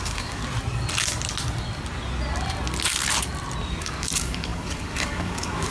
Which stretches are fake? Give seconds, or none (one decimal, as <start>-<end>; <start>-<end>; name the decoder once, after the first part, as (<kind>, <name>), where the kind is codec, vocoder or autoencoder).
0.0-0.4 (codec, DAC); 3.8-5.7